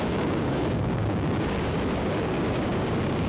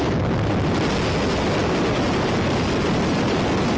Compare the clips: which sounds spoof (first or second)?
first